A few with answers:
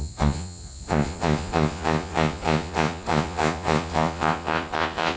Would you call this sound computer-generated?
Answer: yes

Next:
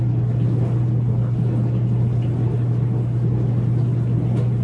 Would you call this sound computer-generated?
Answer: no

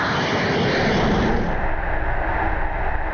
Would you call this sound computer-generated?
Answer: no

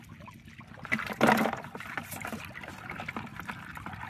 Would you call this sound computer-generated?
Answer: no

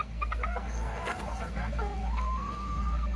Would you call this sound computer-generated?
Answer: yes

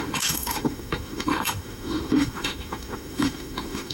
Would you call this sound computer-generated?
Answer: yes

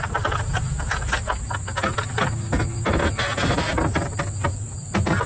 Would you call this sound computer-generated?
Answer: no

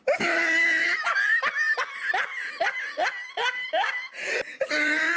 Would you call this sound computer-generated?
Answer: no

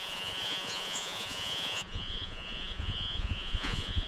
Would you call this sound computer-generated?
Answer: yes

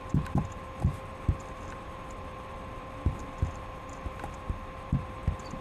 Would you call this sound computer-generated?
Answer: yes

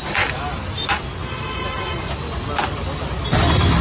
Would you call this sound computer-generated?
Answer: no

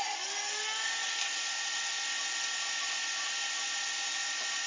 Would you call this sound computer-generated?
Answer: no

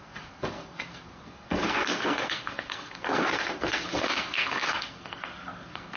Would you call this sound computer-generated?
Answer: yes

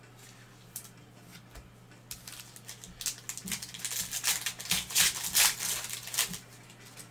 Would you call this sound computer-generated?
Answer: no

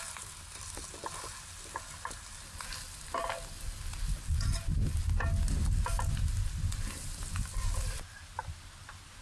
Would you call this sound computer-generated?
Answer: no